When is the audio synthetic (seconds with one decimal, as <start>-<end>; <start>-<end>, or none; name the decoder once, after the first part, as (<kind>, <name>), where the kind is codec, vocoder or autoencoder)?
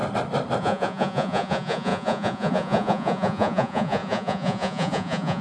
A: 0.6-5.4 (vocoder, Vocos)